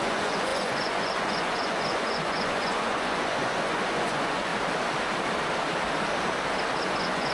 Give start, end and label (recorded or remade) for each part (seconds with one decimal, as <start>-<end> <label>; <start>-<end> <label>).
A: 0.0-4.5 remade; 4.5-6.8 recorded; 6.8-7.3 remade